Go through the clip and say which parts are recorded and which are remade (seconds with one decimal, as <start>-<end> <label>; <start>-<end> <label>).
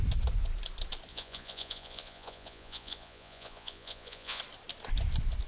0.0-1.1 recorded; 1.1-4.4 remade; 4.4-5.5 recorded